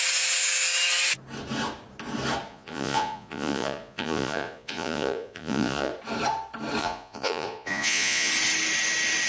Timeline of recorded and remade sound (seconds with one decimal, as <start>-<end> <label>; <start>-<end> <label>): 0.0-2.5 recorded; 2.5-5.9 remade; 5.9-6.8 recorded; 6.8-8.3 remade; 8.3-9.3 recorded